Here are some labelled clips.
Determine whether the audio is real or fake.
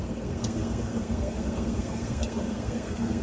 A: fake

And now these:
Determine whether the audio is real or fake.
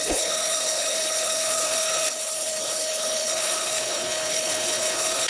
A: fake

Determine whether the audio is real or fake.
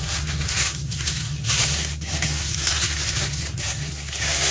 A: fake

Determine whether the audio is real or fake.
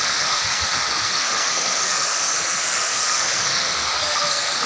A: fake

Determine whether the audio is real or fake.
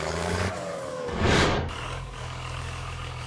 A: fake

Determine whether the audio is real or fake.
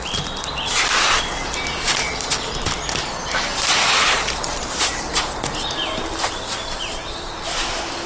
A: real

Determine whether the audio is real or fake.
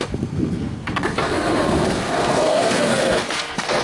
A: fake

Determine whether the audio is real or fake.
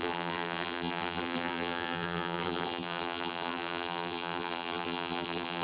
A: fake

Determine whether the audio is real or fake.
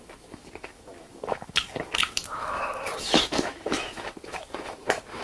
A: fake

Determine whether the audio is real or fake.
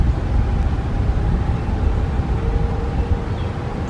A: real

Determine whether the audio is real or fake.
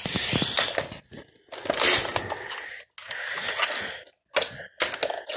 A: real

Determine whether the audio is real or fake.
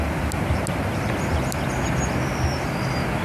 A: real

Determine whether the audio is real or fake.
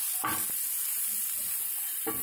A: real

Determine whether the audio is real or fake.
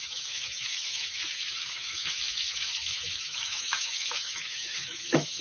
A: fake